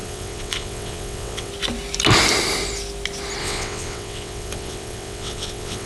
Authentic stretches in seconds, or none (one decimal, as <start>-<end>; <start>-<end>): 1.5-3.4